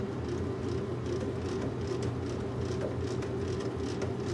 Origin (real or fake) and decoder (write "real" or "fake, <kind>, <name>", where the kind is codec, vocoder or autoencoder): real